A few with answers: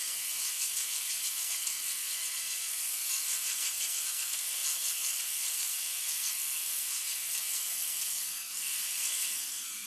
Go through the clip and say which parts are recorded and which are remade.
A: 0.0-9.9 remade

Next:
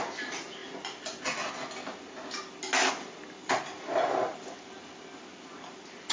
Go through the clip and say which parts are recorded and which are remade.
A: 0.0-6.1 recorded

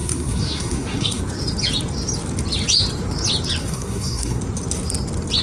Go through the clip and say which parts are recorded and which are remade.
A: 0.0-1.2 remade; 1.2-3.6 recorded; 3.6-4.4 remade; 4.4-5.4 recorded

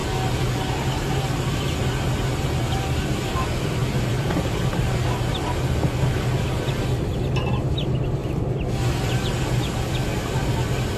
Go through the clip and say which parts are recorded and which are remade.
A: 0.0-11.0 recorded

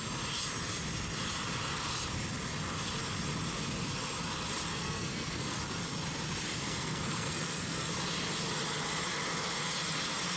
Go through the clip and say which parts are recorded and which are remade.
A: 0.0-4.7 recorded; 4.7-5.6 remade; 5.6-6.5 recorded; 6.5-7.9 remade; 7.9-10.4 recorded